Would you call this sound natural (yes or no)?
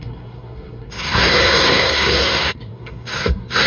no